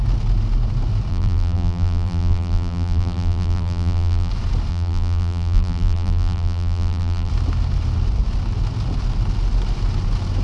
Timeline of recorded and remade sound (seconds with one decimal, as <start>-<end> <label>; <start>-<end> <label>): 0.0-1.1 recorded; 1.1-4.3 remade; 4.3-4.7 recorded; 4.7-7.3 remade; 7.3-10.4 recorded